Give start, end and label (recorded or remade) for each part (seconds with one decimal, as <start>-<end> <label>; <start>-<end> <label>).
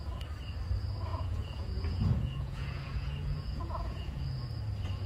0.0-1.1 recorded; 1.1-4.2 remade; 4.2-5.1 recorded